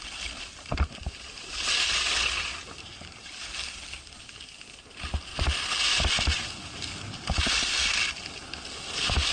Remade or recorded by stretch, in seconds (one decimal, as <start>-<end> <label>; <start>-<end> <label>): 0.0-9.3 recorded